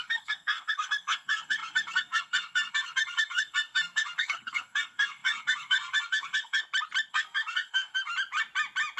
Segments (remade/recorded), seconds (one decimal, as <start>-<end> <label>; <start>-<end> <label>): 0.0-6.6 remade; 6.6-7.1 recorded; 7.1-8.1 remade; 8.1-9.0 recorded